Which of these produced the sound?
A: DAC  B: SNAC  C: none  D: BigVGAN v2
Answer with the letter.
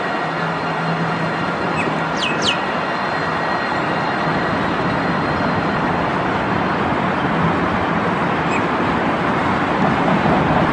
C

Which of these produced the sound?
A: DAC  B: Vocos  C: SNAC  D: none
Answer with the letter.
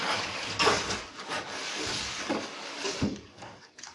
A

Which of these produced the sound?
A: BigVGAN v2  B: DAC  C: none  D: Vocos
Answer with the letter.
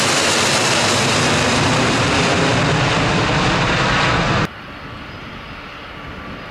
C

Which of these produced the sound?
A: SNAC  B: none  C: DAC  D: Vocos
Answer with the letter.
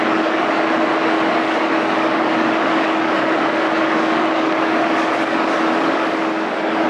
C